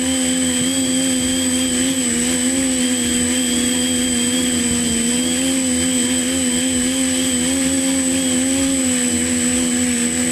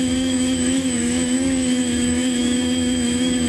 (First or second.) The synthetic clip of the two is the second